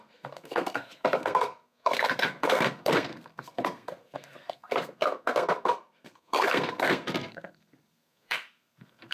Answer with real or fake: fake